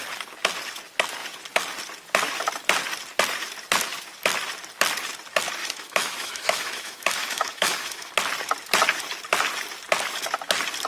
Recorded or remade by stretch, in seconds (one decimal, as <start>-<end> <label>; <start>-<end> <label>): 0.0-5.6 recorded; 5.6-8.1 remade; 8.1-10.9 recorded